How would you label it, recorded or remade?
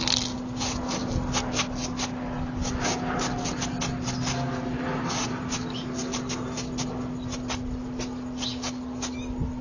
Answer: recorded